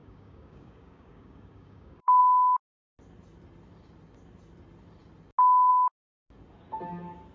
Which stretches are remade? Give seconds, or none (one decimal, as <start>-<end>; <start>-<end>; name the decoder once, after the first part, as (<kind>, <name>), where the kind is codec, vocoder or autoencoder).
0.0-2.2 (codec, DAC)